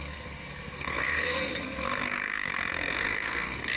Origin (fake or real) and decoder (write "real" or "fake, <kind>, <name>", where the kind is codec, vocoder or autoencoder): fake, codec, SNAC